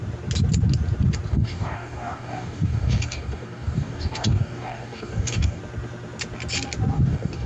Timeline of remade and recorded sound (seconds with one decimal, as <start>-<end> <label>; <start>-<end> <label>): 0.0-1.3 recorded; 1.3-5.6 remade; 5.6-6.9 recorded; 6.9-7.5 remade